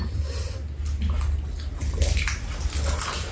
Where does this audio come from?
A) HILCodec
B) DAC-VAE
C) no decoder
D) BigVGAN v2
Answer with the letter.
C